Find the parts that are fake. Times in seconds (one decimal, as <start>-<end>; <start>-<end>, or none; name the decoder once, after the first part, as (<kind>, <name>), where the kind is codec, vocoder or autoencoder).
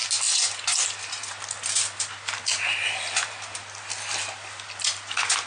none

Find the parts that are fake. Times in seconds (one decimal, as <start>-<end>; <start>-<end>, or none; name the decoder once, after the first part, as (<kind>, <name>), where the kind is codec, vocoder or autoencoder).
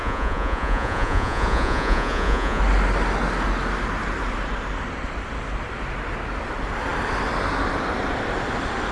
0.0-2.6 (vocoder, Vocos)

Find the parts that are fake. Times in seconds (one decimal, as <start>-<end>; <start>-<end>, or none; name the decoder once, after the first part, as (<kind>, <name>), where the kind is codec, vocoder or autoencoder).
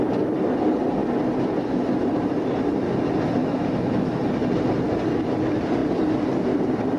3.4-4.2 (autoencoder, DAC-VAE)